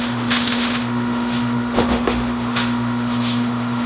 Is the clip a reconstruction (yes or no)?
yes